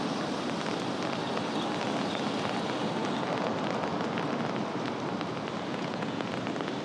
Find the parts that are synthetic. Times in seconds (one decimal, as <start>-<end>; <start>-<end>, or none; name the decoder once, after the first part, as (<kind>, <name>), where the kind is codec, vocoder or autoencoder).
5.7-6.3 (vocoder, Vocos)